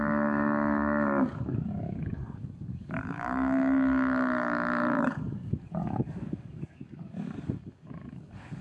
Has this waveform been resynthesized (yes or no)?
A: yes